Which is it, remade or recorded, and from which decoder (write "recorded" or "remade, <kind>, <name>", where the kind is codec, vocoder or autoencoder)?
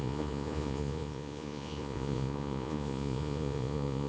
remade, vocoder, Vocos